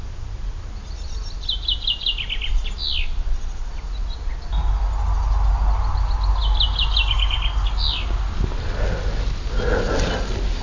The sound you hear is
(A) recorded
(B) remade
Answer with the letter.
A